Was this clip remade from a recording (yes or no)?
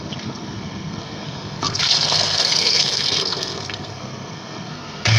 yes